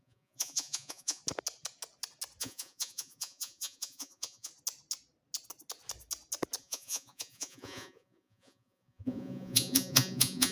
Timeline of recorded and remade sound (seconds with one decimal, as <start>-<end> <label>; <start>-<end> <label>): 0.0-1.2 remade; 1.2-2.4 recorded; 2.4-4.5 remade; 4.5-6.6 recorded; 6.6-10.5 remade